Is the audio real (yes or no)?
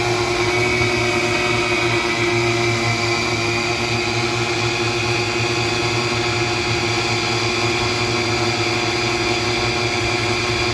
yes